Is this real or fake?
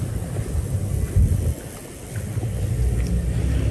real